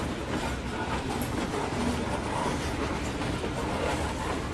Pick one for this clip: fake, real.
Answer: real